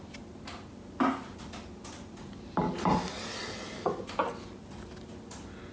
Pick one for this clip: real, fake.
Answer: real